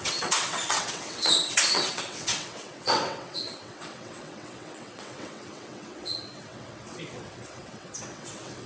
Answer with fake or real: fake